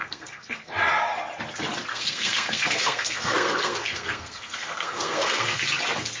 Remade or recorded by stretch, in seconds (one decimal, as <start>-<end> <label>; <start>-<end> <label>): 0.0-0.7 remade; 0.7-1.9 recorded; 1.9-5.6 remade; 5.6-6.2 recorded